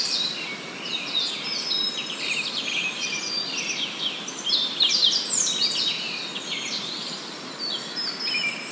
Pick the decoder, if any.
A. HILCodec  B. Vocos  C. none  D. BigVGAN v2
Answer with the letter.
C